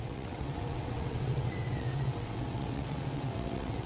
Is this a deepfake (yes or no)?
yes